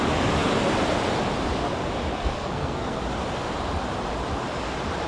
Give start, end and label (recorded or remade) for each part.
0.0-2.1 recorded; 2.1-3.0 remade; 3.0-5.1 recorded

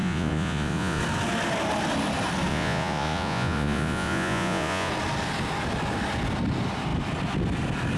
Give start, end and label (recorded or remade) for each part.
0.0-1.0 remade; 1.0-2.5 recorded; 2.5-4.9 remade; 4.9-8.0 recorded

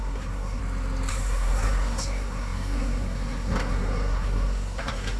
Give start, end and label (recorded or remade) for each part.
0.0-0.6 remade; 0.6-1.1 recorded; 1.1-5.2 remade

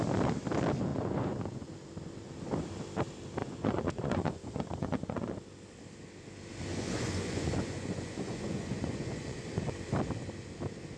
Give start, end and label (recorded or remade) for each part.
0.0-0.9 recorded; 0.9-1.7 remade; 1.7-3.4 recorded; 3.4-5.3 remade; 5.3-6.7 recorded; 6.7-9.7 remade; 9.7-11.0 recorded

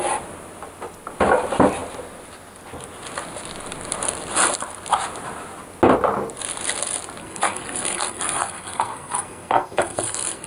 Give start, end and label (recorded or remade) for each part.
0.0-7.2 recorded; 7.2-10.5 remade

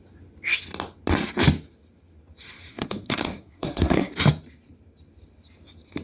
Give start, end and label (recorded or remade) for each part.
0.0-2.7 recorded; 2.7-4.1 remade; 4.1-6.0 recorded